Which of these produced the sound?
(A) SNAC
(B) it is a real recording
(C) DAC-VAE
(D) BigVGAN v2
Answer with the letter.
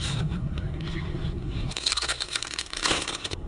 A